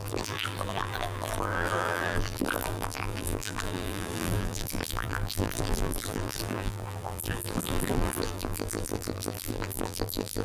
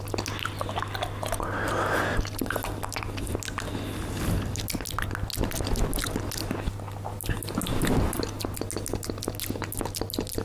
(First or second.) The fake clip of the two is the first